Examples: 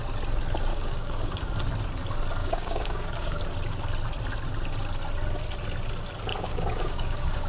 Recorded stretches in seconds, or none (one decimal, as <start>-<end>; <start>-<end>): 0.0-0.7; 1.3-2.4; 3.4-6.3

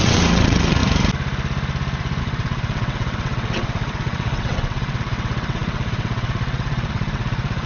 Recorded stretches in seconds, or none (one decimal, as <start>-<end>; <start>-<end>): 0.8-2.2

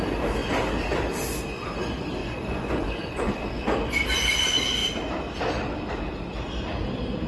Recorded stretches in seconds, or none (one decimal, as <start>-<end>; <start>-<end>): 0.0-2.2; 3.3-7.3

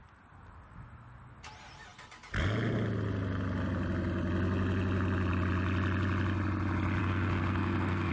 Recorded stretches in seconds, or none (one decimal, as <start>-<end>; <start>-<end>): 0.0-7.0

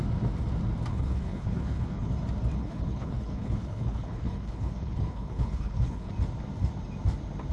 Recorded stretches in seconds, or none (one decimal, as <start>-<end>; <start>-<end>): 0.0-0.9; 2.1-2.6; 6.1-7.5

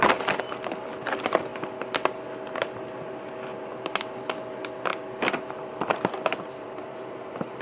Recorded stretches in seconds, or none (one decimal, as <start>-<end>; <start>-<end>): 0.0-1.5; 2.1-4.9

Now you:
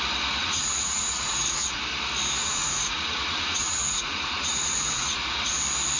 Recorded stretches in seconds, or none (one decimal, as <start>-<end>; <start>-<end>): 0.0-0.4; 1.8-2.4; 5.6-6.0